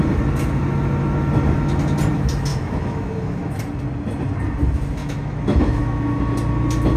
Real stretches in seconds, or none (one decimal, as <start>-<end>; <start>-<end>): 0.0-2.5; 3.6-5.0; 6.2-7.0